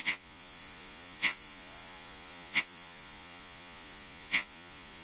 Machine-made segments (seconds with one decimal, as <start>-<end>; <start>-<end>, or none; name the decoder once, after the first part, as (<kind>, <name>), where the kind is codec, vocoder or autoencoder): 0.0-5.0 (vocoder, Vocos)